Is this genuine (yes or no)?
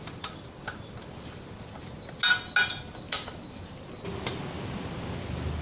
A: yes